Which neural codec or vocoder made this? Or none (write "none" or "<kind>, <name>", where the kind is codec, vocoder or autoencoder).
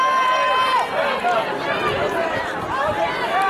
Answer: none